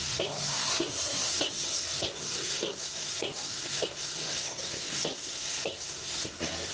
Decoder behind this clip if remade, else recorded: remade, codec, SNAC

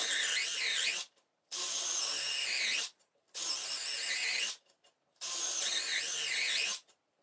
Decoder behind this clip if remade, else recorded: recorded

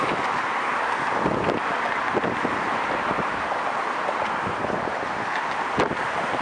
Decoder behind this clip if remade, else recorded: recorded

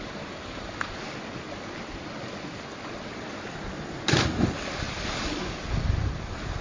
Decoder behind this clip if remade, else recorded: recorded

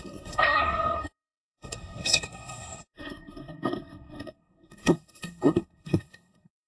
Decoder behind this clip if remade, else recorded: remade, codec, SNAC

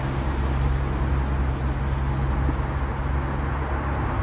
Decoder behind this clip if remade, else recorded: recorded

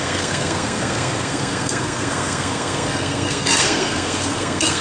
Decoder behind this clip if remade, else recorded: remade, codec, SNAC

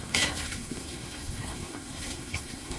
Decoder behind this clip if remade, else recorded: remade, codec, SNAC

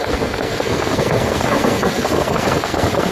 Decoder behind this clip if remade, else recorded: remade, codec, SNAC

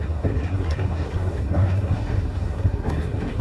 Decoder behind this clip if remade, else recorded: remade, codec, SNAC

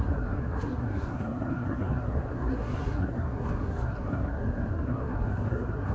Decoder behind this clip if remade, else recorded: remade, codec, SNAC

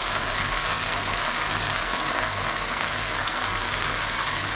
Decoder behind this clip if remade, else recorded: remade, codec, SNAC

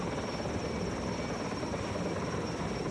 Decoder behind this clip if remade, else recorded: recorded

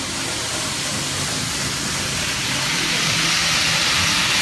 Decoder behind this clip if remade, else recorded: recorded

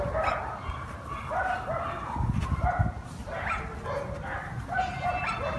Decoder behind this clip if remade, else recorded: recorded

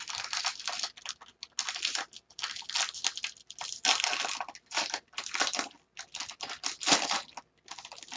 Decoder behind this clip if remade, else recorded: recorded